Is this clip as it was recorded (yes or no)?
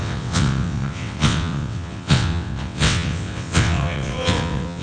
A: no